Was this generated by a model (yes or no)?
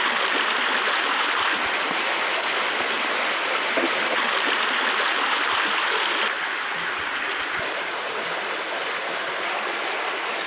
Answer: no